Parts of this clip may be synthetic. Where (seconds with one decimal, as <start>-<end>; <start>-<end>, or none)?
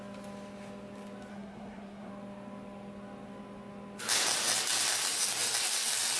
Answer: 1.3-2.1